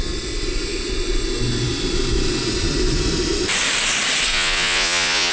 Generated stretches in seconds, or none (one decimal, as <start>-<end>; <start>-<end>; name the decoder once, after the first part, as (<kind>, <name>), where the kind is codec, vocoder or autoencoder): 4.3-5.3 (vocoder, Vocos)